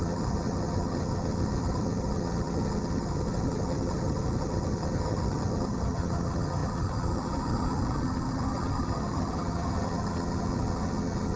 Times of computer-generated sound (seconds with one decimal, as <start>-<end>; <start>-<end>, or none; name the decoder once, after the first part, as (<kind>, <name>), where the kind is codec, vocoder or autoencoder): 0.0-11.4 (vocoder, HiFi-GAN)